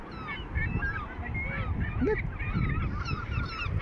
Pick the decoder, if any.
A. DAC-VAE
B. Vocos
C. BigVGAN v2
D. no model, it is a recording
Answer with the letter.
D